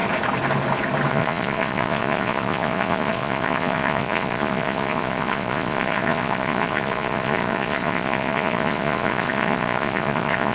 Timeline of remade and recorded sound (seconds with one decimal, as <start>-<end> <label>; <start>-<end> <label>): 0.0-1.1 recorded; 1.1-10.5 remade

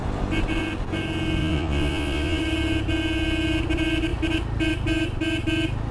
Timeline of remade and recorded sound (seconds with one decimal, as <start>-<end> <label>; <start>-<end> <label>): 0.0-1.4 recorded; 1.4-2.4 remade; 2.4-5.9 recorded

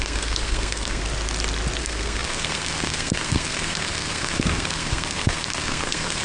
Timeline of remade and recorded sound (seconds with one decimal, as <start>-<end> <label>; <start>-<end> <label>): 0.0-1.0 remade; 1.0-1.8 recorded; 1.8-6.2 remade

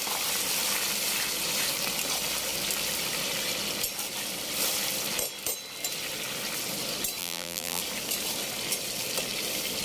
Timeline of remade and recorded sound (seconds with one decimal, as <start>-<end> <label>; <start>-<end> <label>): 0.0-7.2 recorded; 7.2-7.8 remade; 7.8-9.8 recorded

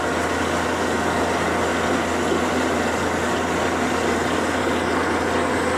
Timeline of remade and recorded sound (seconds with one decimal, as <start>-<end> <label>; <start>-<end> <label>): 0.0-5.8 recorded

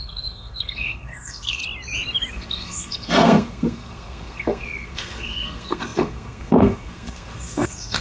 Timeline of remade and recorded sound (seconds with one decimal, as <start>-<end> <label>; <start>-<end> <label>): 0.0-1.6 remade; 1.6-2.3 recorded; 2.3-8.0 remade

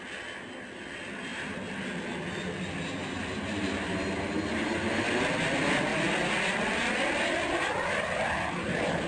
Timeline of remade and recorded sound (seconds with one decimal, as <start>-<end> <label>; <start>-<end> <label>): 0.0-9.1 recorded